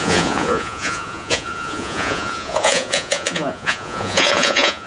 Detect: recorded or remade remade